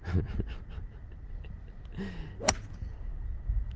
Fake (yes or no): no